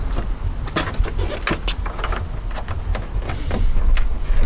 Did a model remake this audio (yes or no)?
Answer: no